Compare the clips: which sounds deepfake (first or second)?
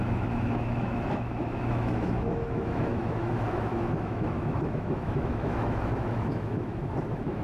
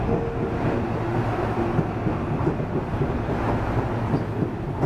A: first